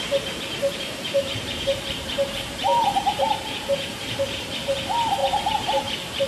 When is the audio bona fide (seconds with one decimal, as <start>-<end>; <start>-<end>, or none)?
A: 0.0-0.7; 4.5-5.2; 5.8-6.3

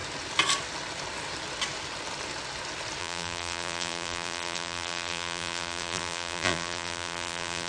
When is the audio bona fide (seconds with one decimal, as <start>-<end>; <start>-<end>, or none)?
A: 0.0-3.0

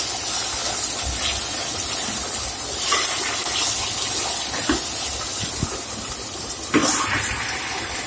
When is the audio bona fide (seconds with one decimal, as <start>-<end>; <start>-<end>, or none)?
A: 0.0-6.8; 7.5-8.1

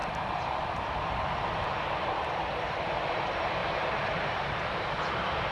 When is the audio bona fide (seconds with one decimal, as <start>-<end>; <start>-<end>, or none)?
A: none

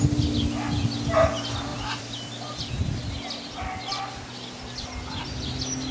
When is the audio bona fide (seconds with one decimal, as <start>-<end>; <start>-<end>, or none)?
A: 0.0-1.7; 2.7-3.9; 5.1-5.9

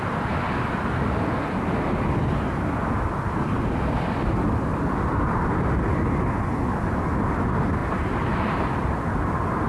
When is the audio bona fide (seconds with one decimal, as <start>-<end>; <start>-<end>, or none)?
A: 0.0-4.7; 5.3-7.8; 9.2-9.7

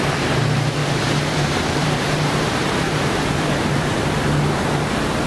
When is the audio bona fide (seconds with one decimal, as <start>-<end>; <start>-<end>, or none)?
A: 0.0-0.8; 4.0-5.3

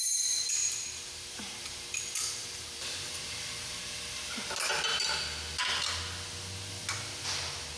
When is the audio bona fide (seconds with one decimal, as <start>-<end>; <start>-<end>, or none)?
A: 0.0-0.6; 4.4-7.8